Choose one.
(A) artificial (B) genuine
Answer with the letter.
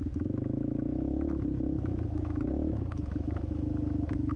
A